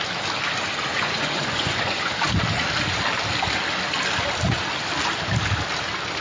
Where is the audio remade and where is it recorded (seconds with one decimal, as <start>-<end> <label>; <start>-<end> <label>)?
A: 0.0-0.9 recorded; 0.9-2.1 remade; 2.1-6.2 recorded